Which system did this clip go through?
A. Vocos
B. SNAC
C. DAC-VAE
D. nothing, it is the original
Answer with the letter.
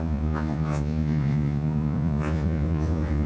A